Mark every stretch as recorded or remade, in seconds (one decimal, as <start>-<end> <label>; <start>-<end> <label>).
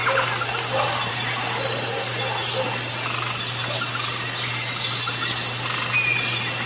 0.0-6.7 recorded